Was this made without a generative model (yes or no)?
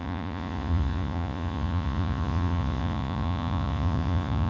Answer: no